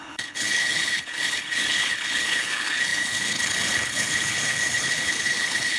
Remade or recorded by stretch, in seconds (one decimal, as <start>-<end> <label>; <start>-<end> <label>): 0.0-5.8 remade